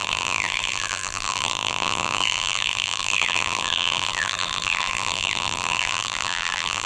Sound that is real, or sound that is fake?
fake